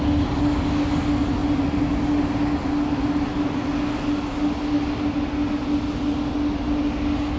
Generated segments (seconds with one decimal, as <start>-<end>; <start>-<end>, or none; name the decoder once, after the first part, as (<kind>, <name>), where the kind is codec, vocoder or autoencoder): none